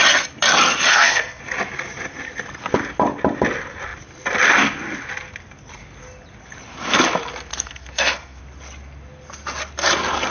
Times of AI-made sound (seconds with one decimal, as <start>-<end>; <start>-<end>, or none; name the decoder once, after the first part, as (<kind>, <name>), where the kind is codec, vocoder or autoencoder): 0.9-1.4 (codec, SNAC); 7.5-8.4